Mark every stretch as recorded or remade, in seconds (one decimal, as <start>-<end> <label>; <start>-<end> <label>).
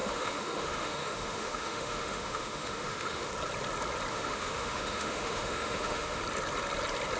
0.0-3.3 remade; 3.3-4.1 recorded; 4.1-6.2 remade; 6.2-7.2 recorded